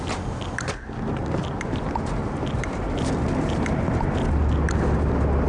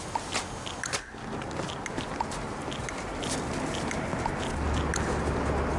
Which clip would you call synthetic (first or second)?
first